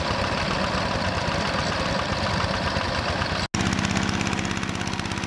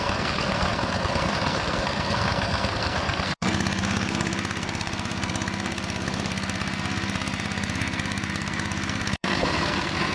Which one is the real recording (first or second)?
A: first